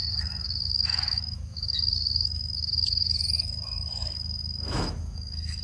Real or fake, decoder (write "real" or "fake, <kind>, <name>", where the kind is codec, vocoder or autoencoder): fake, autoencoder, DAC-VAE